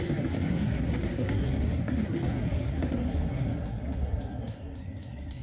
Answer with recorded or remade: remade